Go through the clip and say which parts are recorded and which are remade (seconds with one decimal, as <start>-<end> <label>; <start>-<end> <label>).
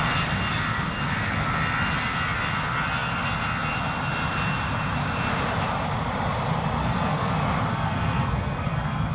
0.0-6.8 recorded; 6.8-7.3 remade; 7.3-7.7 recorded; 7.7-9.1 remade